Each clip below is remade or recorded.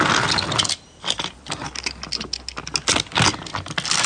recorded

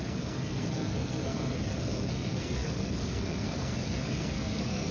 remade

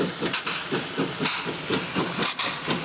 recorded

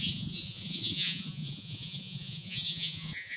remade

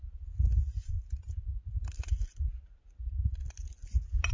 recorded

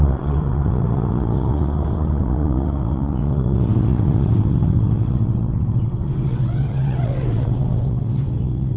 remade